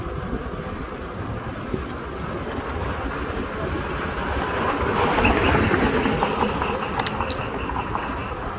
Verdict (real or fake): real